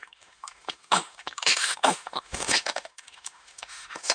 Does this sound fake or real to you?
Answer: fake